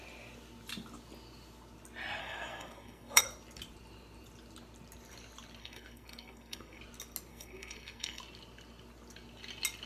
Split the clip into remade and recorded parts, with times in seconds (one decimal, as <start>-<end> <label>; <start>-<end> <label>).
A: 0.0-2.2 recorded; 2.2-3.2 remade; 3.2-5.6 recorded; 5.6-6.8 remade; 6.8-7.3 recorded; 7.3-8.2 remade; 8.2-9.9 recorded